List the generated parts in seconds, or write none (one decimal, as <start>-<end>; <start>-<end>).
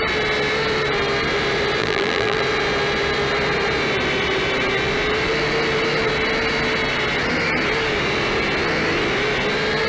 1.8-2.4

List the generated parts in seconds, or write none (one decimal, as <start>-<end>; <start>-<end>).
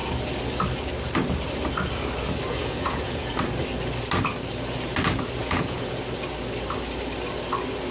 2.5-3.3; 5.4-6.0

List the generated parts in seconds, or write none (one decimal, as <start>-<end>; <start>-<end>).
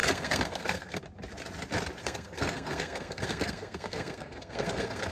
0.0-1.0; 2.0-5.1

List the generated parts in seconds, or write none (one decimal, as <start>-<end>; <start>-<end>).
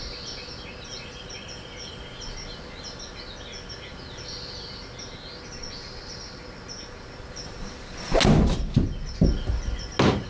none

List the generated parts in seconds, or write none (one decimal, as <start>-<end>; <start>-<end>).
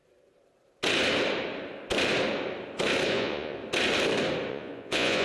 3.1-3.6; 4.5-5.2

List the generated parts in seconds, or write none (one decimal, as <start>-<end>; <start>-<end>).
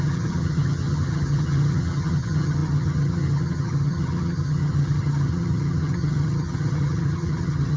0.0-7.8